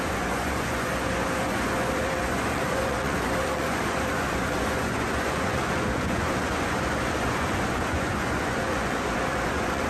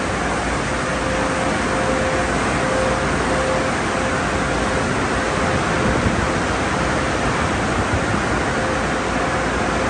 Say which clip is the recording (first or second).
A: second